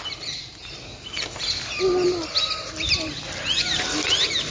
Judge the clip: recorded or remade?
recorded